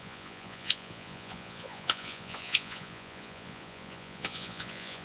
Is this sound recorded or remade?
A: remade